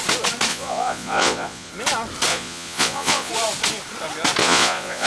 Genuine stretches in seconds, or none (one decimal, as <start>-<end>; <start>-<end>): 0.0-0.5; 1.7-2.3; 3.3-4.4

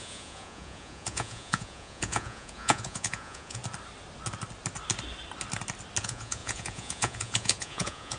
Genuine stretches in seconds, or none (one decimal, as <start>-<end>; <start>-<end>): 3.6-6.0